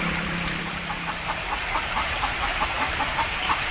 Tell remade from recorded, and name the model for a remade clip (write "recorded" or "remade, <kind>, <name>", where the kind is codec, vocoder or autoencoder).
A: remade, vocoder, BigVGAN v2